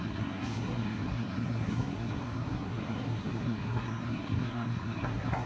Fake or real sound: fake